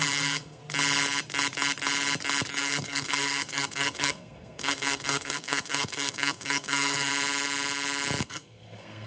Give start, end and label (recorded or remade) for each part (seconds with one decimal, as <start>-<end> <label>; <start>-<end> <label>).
0.0-0.6 remade; 0.6-2.6 recorded; 2.6-7.1 remade; 7.1-8.2 recorded; 8.2-9.1 remade